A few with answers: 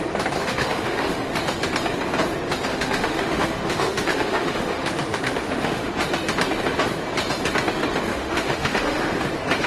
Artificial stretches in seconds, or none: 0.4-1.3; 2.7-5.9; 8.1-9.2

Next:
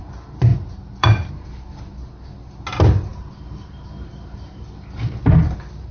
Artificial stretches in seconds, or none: 0.5-1.3; 3.1-5.2

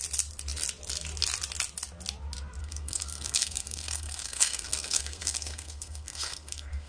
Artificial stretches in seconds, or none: 2.6-6.9

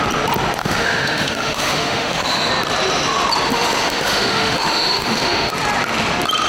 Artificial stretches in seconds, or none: 0.6-2.5; 3.5-5.5

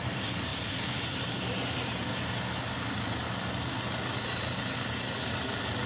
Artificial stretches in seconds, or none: 0.0-2.1

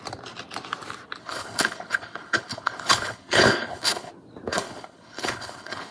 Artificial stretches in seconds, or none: 1.2-4.1; 4.5-5.9

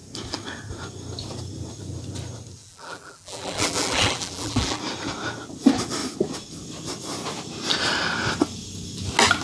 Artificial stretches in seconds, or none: 2.6-4.8

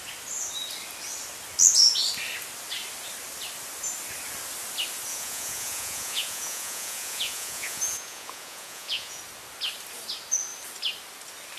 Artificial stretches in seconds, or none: 5.1-9.2